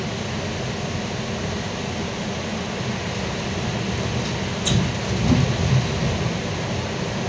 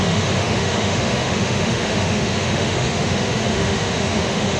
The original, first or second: first